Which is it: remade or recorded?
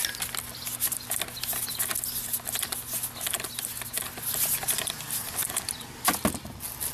recorded